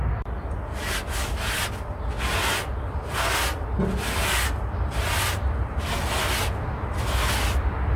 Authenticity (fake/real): real